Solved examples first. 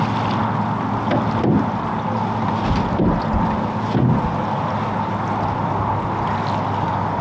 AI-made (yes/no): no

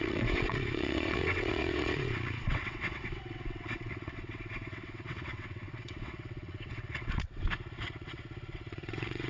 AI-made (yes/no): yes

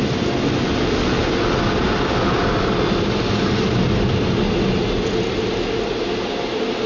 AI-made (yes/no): no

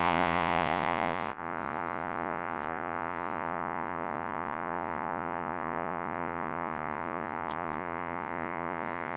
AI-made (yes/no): yes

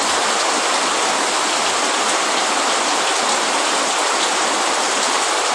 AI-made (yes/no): no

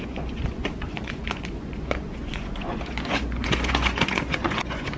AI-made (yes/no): yes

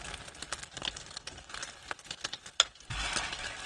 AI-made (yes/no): no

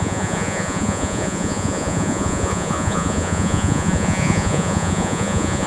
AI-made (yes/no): yes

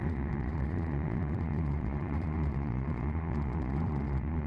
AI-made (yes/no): yes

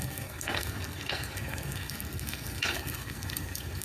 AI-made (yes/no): yes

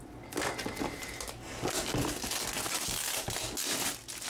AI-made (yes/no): no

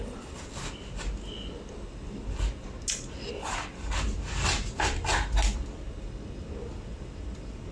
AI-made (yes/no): no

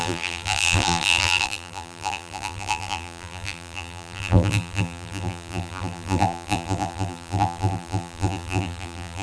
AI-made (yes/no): yes